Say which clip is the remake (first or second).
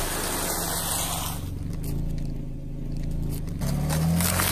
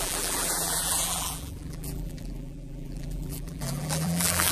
second